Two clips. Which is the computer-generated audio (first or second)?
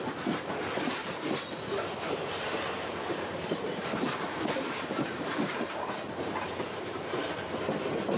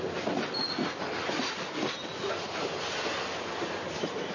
first